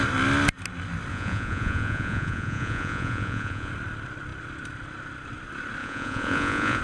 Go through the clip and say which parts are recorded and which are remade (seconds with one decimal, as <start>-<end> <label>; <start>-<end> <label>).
0.0-1.1 recorded; 1.1-3.7 remade; 3.7-5.8 recorded; 5.8-6.8 remade